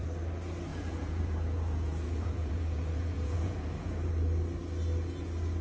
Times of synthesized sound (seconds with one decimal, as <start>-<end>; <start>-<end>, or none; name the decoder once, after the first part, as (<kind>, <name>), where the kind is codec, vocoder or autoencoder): 0.7-4.1 (vocoder, Vocos)